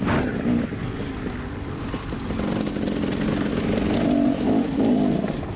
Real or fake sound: real